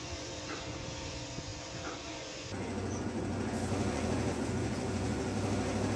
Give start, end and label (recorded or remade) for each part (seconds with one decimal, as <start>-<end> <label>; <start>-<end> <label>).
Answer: 0.0-5.3 remade; 5.3-6.0 recorded